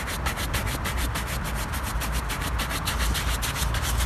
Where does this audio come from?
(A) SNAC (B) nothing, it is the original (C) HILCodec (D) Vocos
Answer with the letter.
B